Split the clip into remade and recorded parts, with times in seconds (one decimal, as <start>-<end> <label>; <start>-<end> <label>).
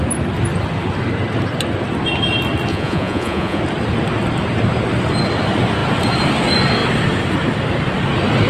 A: 0.0-2.7 recorded; 2.7-3.6 remade; 3.6-8.5 recorded